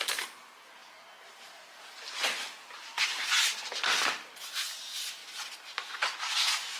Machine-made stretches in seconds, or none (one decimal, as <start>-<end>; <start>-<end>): 0.0-6.8